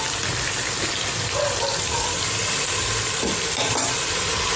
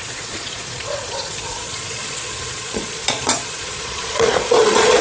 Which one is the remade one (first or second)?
second